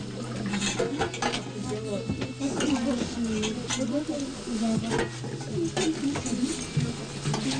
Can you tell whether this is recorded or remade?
recorded